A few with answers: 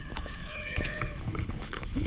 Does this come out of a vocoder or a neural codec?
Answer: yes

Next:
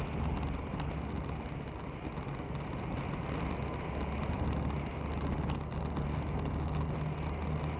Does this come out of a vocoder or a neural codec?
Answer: no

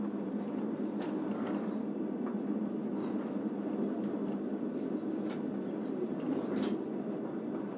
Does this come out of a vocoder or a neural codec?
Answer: no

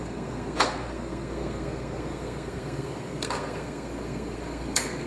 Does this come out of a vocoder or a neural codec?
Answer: yes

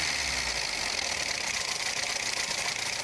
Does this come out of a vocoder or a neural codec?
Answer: no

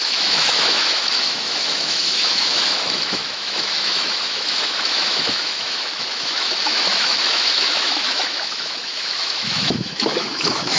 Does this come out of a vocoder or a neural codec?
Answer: yes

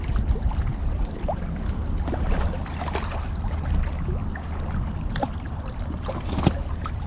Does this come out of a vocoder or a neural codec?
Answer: no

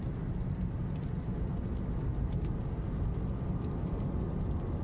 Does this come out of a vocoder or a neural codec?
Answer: no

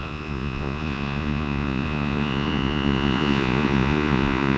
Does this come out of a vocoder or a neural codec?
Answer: yes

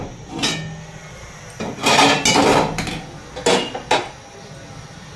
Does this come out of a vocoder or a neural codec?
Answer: no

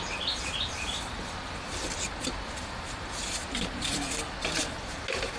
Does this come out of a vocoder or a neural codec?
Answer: no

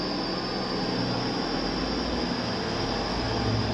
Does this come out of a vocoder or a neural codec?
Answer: no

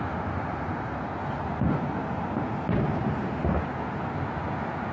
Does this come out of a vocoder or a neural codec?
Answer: no